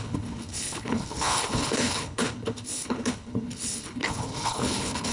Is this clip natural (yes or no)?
no